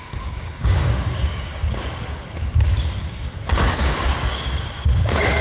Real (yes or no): no